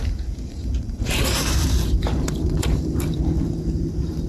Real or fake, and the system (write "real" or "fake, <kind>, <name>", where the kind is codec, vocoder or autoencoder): fake, vocoder, BigVGAN v2